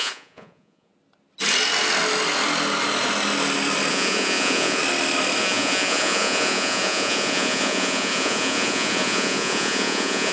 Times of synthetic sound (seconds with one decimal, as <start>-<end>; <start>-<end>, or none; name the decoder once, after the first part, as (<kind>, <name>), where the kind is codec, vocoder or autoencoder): 0.0-0.9 (vocoder, Vocos); 3.9-4.8; 5.4-10.3